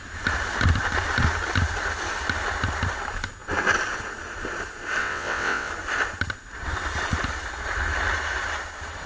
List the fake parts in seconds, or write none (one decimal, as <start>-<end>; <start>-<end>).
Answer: 5.0-5.7